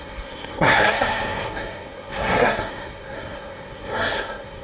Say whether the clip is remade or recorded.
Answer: remade